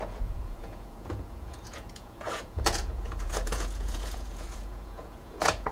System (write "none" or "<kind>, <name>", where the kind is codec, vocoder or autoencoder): vocoder, Vocos